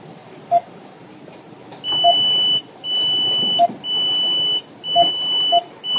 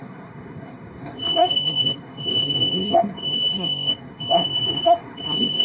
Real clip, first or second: first